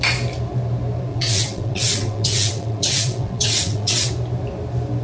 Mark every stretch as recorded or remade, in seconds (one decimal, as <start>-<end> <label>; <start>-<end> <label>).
0.0-1.1 recorded; 1.1-4.1 remade; 4.1-5.0 recorded